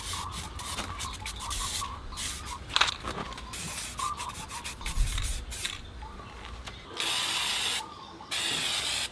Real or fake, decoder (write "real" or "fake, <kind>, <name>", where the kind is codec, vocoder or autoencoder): real